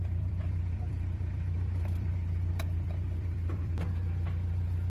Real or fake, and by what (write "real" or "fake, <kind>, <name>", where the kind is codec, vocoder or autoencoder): fake, vocoder, BigVGAN v2